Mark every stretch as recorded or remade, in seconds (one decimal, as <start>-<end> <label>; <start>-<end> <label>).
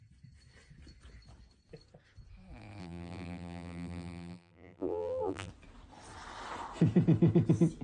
0.0-2.8 recorded; 2.8-5.5 remade; 5.5-7.8 recorded